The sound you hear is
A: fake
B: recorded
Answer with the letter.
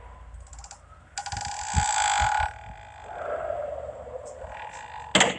B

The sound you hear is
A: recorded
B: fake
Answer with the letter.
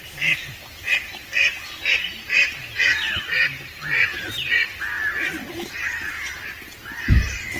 A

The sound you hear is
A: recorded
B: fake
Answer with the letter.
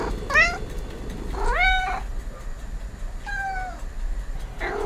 A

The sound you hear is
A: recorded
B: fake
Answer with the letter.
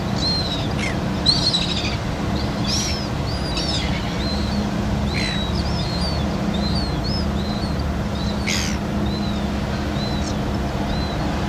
A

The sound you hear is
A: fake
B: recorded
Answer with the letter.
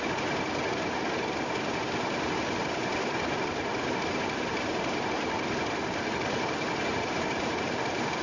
B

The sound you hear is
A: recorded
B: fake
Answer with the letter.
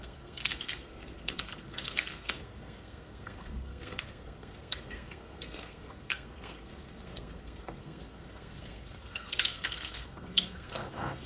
B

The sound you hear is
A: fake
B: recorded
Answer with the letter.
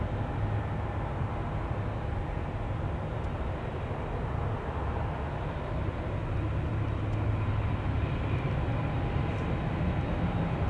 B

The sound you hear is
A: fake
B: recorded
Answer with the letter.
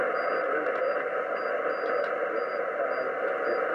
B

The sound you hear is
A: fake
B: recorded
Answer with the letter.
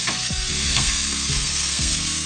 A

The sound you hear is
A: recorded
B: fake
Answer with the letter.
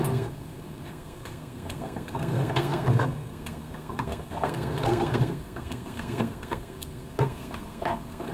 B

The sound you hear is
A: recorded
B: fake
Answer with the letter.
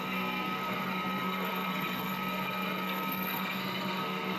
B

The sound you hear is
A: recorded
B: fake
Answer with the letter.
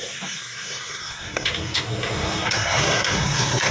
B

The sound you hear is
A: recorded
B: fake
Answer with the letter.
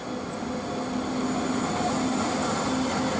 A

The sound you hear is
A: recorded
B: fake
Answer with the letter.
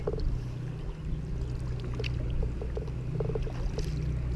A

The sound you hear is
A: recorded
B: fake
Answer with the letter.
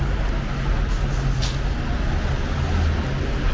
A